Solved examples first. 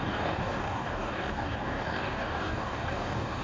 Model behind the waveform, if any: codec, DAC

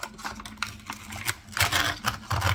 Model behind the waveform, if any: none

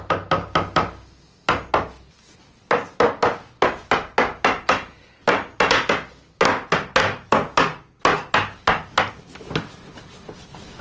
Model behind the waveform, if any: none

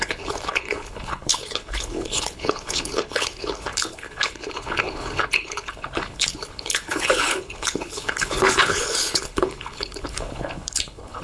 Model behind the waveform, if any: codec, HILCodec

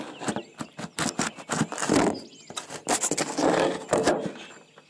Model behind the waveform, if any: none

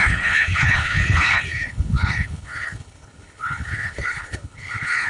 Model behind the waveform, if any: codec, HILCodec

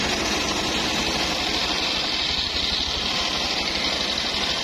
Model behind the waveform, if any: none